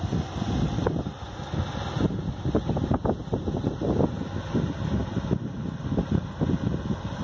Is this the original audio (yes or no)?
yes